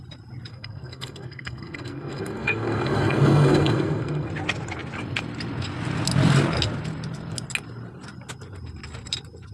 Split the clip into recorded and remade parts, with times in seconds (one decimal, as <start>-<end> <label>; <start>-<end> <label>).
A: 0.0-0.5 recorded; 0.5-4.3 remade; 4.3-9.5 recorded